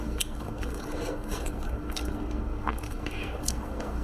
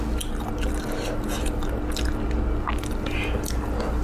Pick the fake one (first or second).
first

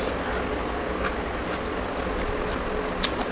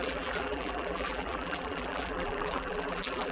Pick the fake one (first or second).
second